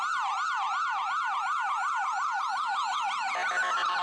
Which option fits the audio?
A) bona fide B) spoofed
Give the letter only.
A